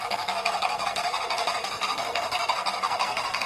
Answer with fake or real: fake